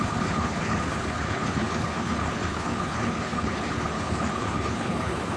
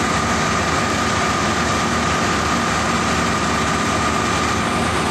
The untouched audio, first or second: second